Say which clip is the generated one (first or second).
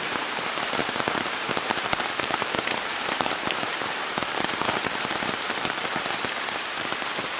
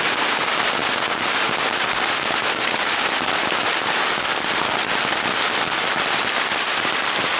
first